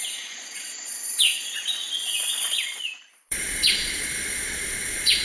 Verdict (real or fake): fake